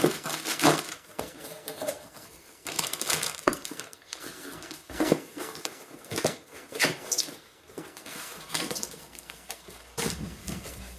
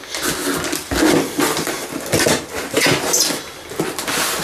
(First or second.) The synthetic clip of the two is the first